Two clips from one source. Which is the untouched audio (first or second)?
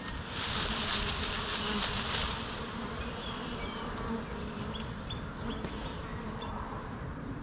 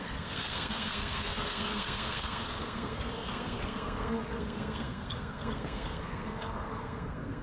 first